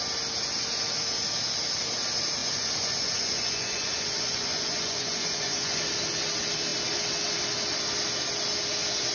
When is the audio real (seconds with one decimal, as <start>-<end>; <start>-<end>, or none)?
0.0-2.4; 5.8-9.1